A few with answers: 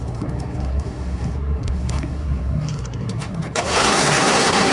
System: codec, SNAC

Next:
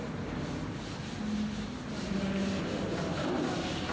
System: none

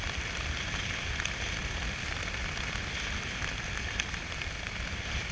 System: none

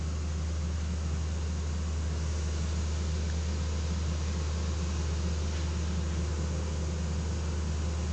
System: none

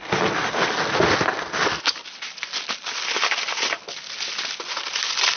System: none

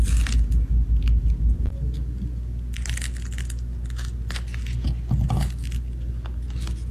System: none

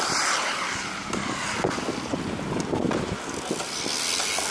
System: none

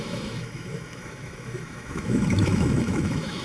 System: autoencoder, DAC-VAE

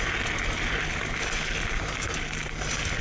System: none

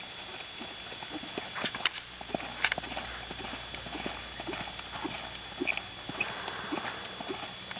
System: none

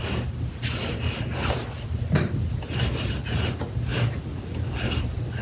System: none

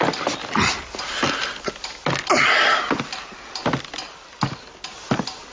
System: none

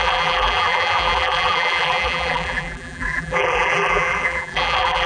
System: vocoder, BigVGAN v2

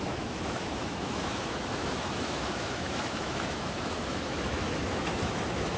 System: autoencoder, DAC-VAE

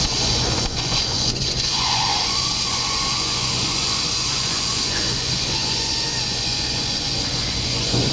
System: vocoder, Vocos